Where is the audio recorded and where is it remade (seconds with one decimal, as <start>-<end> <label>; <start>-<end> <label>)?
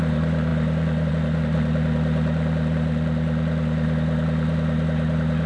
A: 0.0-5.5 recorded